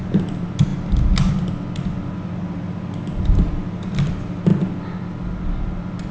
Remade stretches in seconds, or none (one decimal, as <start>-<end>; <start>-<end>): none